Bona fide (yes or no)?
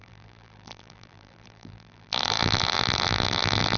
no